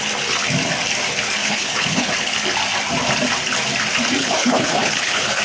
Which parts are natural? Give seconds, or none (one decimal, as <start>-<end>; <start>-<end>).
0.0-1.4; 2.1-4.2

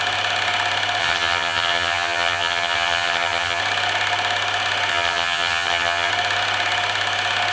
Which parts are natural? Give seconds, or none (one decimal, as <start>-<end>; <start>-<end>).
0.0-1.0; 3.6-4.9; 6.1-7.5

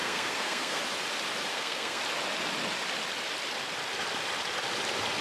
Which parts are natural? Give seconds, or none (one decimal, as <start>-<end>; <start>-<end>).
0.8-1.5; 2.0-5.2

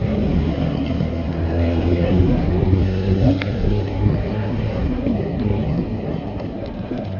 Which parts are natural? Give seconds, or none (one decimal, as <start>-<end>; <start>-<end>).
none